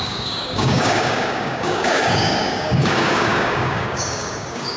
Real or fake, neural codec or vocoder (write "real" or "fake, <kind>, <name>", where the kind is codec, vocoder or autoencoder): fake, codec, DAC